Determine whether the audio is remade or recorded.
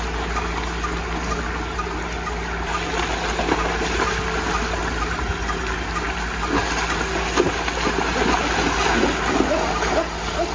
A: recorded